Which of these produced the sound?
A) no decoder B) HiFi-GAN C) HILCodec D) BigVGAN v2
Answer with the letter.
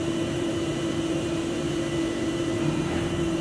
D